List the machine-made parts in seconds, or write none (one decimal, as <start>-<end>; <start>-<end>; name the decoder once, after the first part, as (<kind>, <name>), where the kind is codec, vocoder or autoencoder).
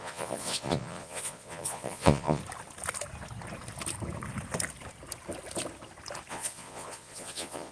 0.0-2.4 (vocoder, Vocos); 6.3-7.7